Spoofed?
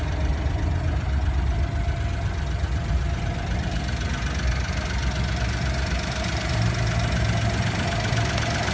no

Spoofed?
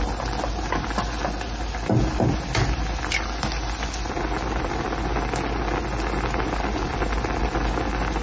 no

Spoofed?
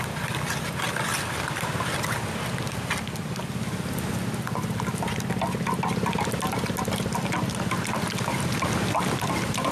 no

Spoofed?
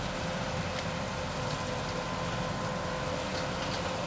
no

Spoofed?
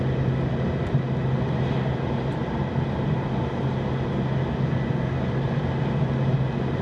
no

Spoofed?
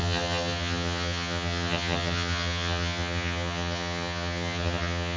yes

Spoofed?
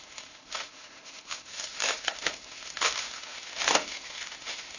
yes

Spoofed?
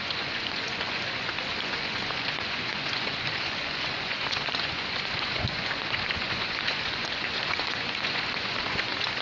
yes